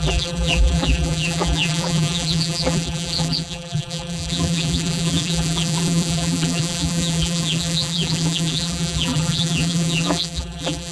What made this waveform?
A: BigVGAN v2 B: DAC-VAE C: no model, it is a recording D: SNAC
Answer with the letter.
A